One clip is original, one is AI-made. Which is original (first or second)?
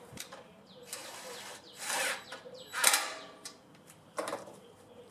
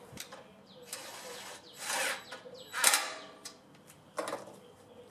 second